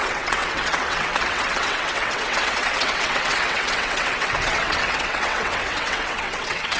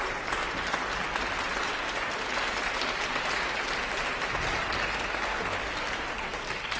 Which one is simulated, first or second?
first